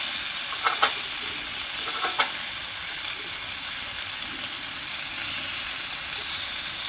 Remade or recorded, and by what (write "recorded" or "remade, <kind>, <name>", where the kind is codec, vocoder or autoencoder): recorded